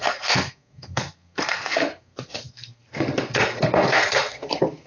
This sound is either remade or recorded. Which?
remade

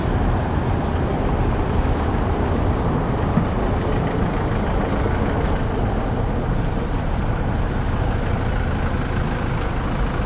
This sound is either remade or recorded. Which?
recorded